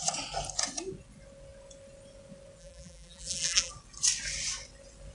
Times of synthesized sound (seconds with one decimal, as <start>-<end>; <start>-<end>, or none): 2.6-3.7